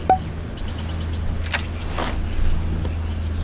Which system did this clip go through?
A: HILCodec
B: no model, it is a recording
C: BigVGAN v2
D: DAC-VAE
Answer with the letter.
B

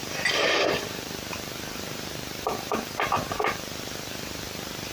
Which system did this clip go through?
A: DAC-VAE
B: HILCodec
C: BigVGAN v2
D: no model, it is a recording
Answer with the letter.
C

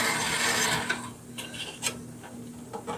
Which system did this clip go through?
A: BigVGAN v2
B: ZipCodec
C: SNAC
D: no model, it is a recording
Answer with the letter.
D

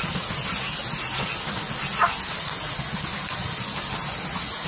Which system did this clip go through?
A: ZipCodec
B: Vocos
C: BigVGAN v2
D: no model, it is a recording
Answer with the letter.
D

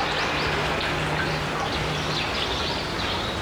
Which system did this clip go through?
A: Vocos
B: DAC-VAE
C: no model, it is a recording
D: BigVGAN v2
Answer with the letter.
C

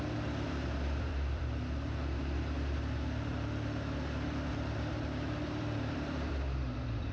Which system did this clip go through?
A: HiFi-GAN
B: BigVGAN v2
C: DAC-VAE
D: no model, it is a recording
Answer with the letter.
B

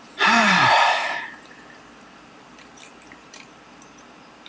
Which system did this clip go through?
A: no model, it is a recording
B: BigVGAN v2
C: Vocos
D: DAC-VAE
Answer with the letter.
B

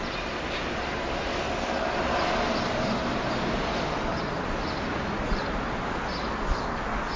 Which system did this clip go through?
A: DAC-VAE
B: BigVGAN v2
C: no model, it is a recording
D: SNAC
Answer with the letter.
C